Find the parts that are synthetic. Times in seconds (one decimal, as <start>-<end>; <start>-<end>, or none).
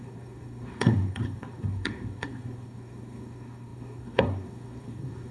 0.0-5.3